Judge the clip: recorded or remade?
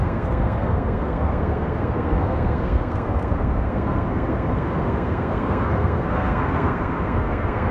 remade